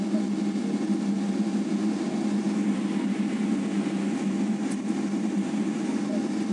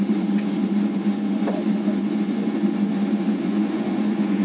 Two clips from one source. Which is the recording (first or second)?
first